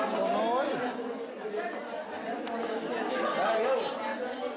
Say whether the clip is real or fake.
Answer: real